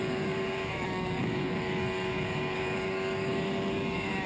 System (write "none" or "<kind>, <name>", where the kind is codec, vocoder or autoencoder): codec, DAC